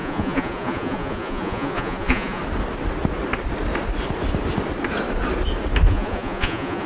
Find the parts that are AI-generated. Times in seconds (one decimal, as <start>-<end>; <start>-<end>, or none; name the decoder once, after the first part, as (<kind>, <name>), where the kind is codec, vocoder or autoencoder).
0.0-2.4 (vocoder, Vocos); 5.9-6.9